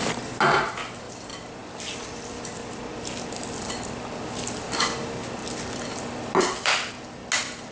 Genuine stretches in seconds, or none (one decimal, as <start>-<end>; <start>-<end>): 0.0-7.7